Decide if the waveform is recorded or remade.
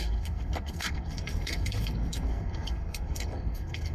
remade